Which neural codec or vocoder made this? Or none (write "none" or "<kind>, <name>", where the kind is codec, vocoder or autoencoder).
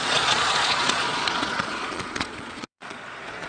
vocoder, Vocos